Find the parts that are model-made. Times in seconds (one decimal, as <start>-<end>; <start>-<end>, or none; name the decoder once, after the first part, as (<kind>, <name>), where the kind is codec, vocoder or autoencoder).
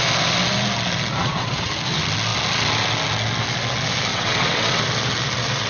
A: 1.2-1.7 (vocoder, WaveNeXt); 4.1-4.8